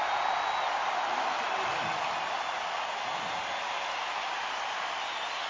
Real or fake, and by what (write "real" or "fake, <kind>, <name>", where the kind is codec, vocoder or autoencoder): real